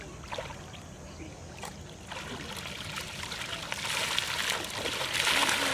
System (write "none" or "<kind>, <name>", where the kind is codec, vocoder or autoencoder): none